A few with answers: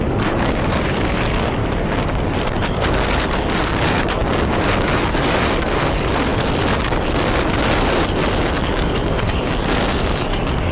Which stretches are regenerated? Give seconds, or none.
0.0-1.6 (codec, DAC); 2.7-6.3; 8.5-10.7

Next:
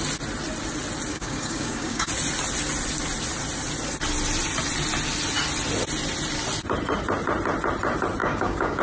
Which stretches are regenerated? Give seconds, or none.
1.1-2.1 (codec, DAC); 8.2-8.8

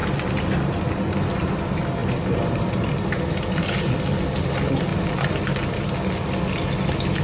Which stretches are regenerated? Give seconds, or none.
none

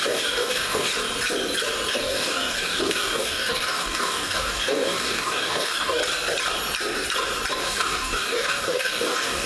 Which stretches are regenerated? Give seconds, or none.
0.0-0.9 (codec, DAC); 1.9-6.0; 7.6-9.5

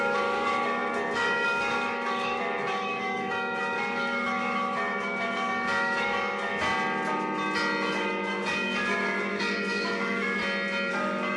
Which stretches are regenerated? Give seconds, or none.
0.0-6.5 (codec, DAC); 7.9-10.4; 10.9-11.4

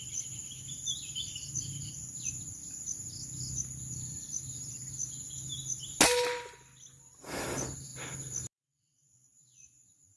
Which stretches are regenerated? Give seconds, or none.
none

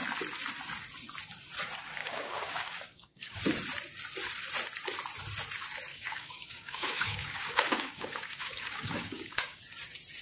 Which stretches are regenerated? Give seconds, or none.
2.0-3.4 (codec, DAC); 5.9-9.6